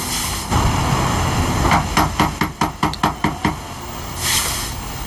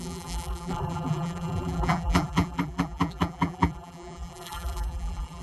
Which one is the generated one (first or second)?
second